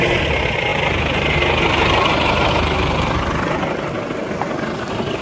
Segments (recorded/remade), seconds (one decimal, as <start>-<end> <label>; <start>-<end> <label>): 0.0-5.2 recorded